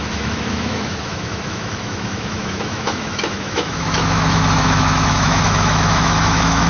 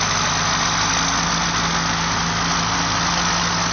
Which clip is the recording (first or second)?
second